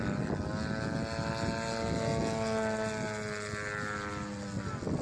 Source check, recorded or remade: recorded